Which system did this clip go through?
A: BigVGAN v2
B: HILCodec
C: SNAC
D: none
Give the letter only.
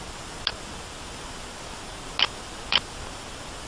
D